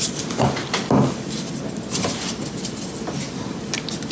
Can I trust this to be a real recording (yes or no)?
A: yes